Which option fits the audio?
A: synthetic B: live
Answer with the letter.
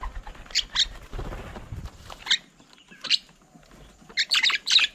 B